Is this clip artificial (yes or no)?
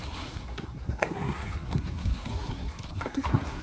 yes